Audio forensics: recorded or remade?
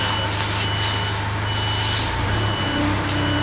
recorded